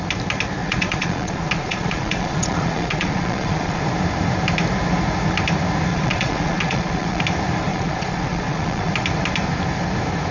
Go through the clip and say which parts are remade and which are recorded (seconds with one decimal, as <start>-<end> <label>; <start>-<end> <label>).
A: 0.0-0.6 recorded; 0.6-3.8 remade; 3.8-5.9 recorded; 5.9-7.2 remade; 7.2-7.7 recorded; 7.7-8.9 remade; 8.9-10.3 recorded